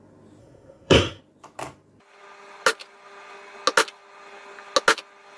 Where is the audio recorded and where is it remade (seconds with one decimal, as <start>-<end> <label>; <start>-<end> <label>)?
0.0-0.4 recorded; 0.4-1.2 remade; 1.2-5.4 recorded